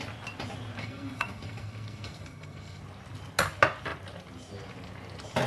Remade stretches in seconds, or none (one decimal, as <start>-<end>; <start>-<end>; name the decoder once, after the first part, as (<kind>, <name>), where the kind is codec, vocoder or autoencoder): 0.8-2.8 (codec, SNAC)